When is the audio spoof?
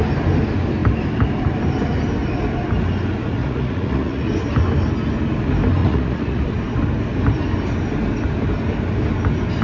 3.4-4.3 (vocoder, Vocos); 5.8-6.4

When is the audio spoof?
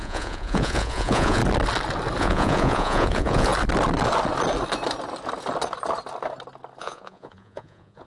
0.0-1.4 (vocoder, Vocos); 2.2-3.5; 6.8-8.1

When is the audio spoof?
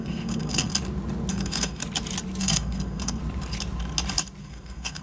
0.0-0.7 (codec, SNAC); 1.3-1.8; 2.4-3.2; 4.4-5.0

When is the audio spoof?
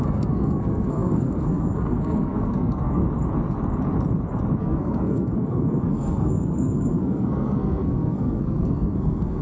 0.0-3.0 (codec, SNAC); 4.6-9.4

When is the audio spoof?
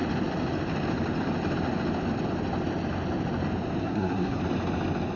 3.8-4.4 (codec, SNAC)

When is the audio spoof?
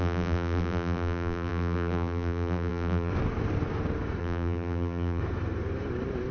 0.0-3.1 (vocoder, BigVGAN v2); 4.2-5.2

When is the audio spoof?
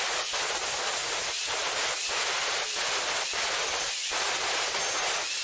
none